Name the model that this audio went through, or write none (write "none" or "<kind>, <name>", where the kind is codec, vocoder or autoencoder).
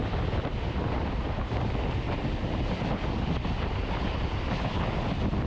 none